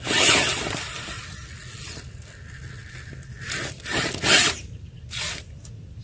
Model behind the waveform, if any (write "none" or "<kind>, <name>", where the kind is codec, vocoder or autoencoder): none